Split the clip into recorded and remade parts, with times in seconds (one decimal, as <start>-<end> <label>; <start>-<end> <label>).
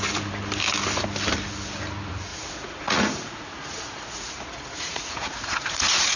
0.0-2.3 recorded; 2.3-6.2 remade